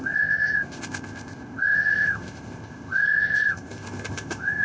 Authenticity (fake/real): fake